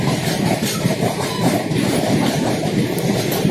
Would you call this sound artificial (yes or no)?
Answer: yes